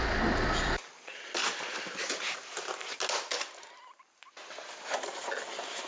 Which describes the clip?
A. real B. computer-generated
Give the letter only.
A